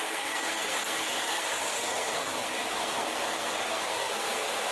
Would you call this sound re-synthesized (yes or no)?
yes